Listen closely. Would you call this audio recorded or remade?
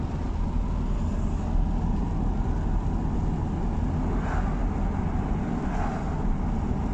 recorded